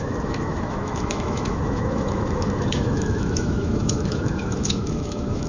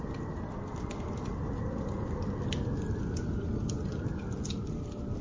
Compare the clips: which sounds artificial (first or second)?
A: first